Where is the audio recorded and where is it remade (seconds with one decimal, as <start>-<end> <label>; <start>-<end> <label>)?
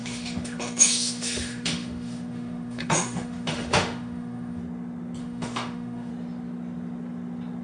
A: 0.0-4.6 remade; 4.6-5.2 recorded; 5.2-6.1 remade; 6.1-7.6 recorded